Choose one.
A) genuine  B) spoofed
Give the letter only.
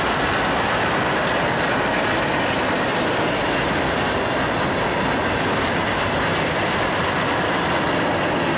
A